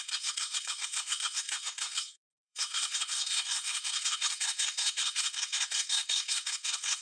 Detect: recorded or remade remade